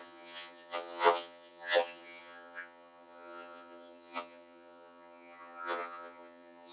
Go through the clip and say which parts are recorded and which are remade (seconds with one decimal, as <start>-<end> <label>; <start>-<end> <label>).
0.0-6.7 remade